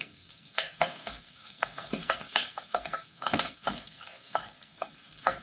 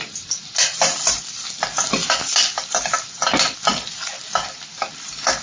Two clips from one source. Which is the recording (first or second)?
second